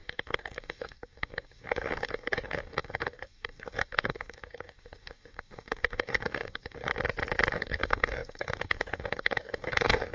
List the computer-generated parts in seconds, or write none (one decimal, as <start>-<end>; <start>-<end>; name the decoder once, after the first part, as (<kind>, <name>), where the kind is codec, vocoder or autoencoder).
0.0-6.9 (codec, DAC); 7.5-10.1